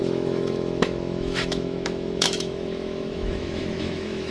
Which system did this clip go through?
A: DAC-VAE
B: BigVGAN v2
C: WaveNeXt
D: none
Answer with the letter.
A